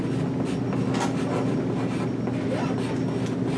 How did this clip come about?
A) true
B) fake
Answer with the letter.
A